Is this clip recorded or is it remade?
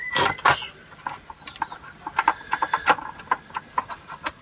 recorded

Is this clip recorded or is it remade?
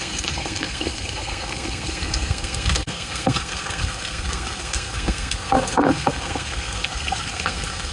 remade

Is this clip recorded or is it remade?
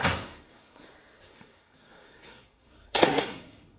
remade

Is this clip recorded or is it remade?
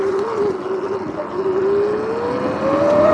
recorded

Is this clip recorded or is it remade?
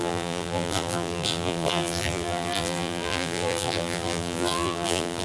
remade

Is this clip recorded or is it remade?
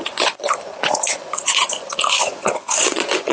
remade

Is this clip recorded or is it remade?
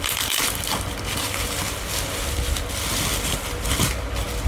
recorded